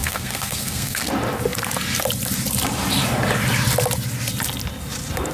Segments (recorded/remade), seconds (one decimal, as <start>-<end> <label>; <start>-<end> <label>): 0.0-1.1 remade; 1.1-5.3 recorded